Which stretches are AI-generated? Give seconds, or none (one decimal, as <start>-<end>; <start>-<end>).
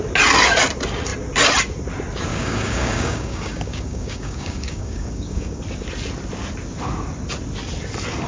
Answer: 2.3-5.6